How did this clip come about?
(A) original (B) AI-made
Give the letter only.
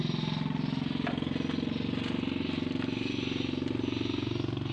A